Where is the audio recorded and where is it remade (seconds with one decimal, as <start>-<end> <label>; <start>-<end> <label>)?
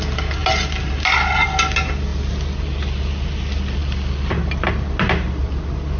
0.0-6.0 recorded